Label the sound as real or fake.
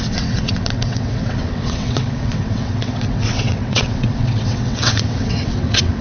fake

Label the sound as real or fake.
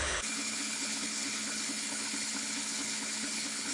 fake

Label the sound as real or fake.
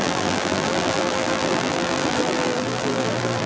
fake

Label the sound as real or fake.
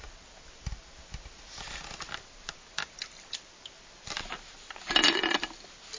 real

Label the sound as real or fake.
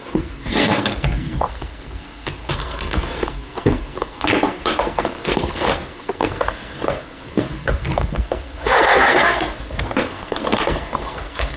fake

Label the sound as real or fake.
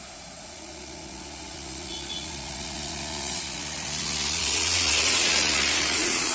fake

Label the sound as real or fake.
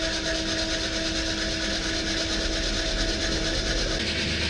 real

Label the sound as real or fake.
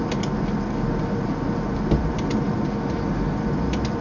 real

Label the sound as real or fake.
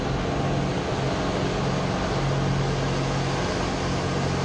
real